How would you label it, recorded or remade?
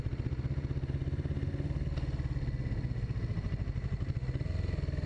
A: recorded